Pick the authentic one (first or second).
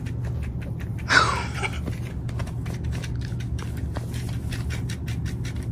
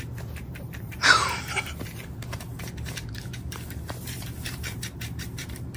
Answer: first